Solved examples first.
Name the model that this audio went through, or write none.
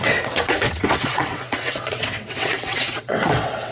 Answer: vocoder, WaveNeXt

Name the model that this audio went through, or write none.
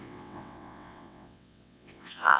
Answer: vocoder, WaveNeXt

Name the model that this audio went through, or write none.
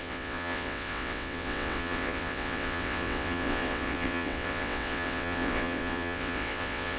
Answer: vocoder, WaveNeXt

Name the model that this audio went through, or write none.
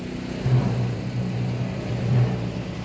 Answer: none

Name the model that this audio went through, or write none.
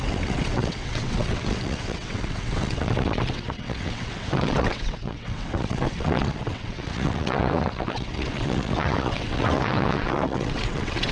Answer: vocoder, WaveNeXt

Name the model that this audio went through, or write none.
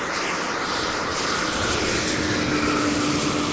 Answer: none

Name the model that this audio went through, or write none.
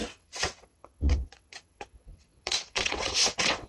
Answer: vocoder, WaveNeXt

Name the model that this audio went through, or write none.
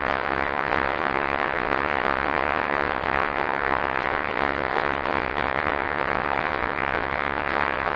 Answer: vocoder, WaveNeXt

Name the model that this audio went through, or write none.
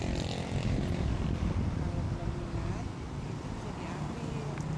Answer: none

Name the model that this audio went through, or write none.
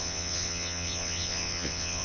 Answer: vocoder, WaveNeXt